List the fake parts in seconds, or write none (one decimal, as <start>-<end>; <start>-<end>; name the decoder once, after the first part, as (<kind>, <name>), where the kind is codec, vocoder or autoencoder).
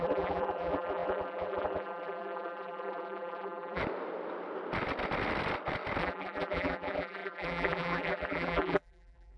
0.0-3.8 (vocoder, BigVGAN v2); 6.0-9.4